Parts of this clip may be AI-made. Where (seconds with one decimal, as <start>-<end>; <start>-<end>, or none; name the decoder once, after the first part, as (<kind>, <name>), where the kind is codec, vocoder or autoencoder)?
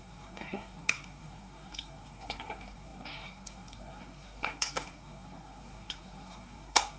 0.0-7.0 (codec, SNAC)